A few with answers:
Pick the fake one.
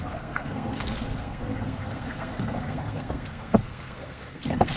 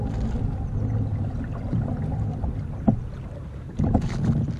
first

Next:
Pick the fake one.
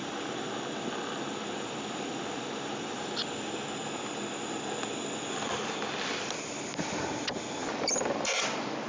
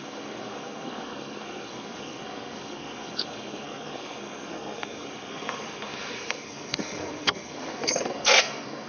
second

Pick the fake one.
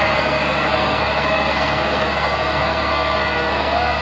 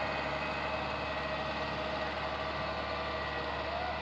first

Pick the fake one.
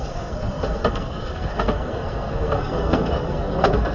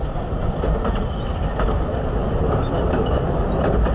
first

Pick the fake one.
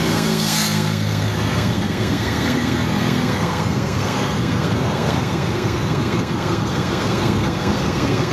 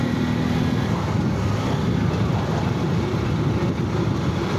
first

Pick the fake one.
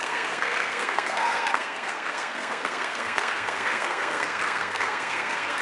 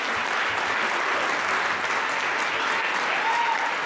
first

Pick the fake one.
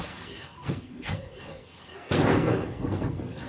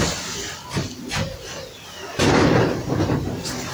first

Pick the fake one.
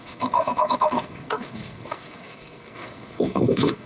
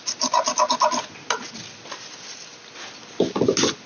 first